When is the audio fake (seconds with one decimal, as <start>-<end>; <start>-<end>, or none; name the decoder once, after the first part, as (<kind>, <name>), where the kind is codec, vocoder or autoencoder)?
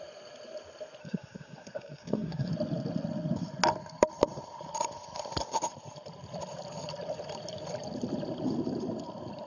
1.0-2.5 (codec, SNAC)